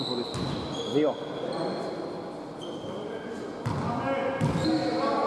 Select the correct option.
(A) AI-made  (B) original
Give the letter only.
B